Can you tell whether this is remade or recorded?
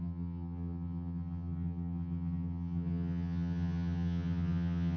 remade